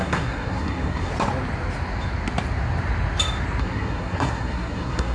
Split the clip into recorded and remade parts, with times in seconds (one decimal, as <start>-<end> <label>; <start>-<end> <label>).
0.0-1.1 remade; 1.1-3.6 recorded; 3.6-5.1 remade